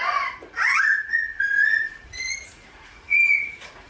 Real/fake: fake